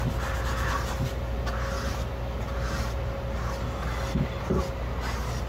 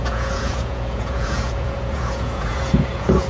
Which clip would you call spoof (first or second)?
second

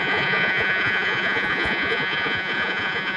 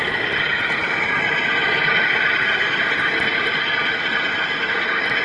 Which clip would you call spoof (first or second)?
first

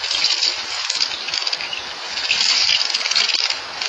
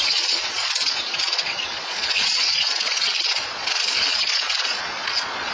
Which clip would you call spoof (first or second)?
second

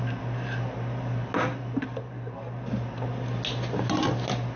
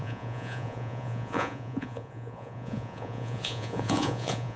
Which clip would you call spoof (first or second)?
second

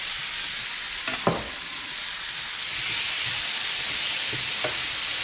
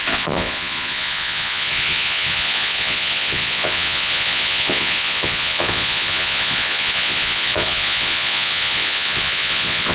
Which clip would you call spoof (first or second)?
second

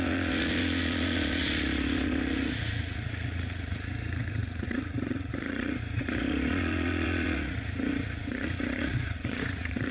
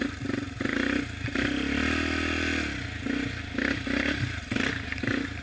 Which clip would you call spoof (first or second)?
first